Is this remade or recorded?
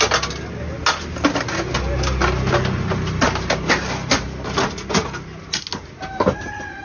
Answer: recorded